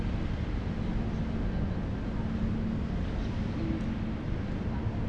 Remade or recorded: recorded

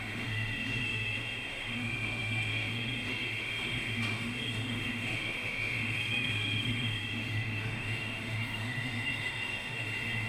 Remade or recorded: remade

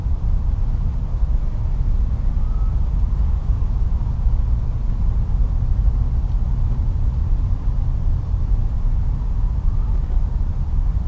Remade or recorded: recorded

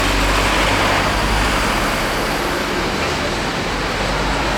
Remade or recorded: recorded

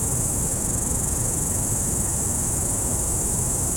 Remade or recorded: remade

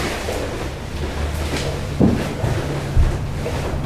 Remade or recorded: recorded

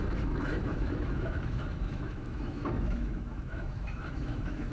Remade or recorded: remade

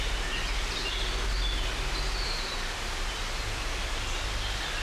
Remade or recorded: recorded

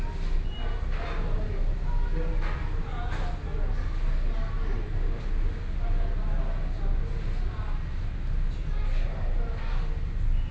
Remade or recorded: recorded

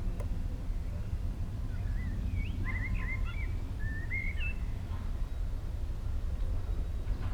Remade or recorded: recorded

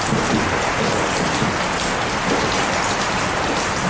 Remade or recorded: recorded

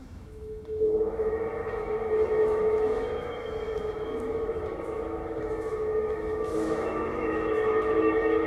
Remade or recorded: remade